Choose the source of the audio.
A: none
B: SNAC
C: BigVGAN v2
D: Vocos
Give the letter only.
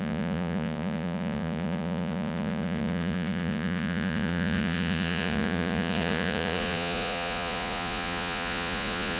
D